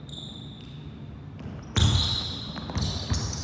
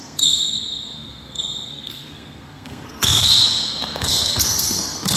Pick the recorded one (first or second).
first